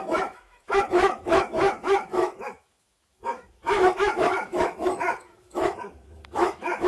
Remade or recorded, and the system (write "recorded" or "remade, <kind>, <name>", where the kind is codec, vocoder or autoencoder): remade, autoencoder, DAC-VAE